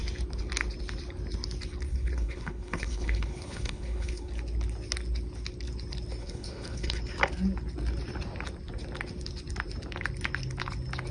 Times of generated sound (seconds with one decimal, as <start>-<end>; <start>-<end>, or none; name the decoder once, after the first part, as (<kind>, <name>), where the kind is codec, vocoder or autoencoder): 1.9-4.3 (codec, HILCodec); 6.2-7.0